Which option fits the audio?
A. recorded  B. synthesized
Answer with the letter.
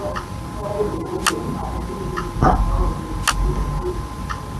A